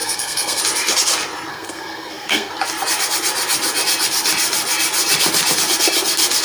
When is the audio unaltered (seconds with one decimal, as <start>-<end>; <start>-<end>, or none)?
0.6-1.5; 2.5-6.4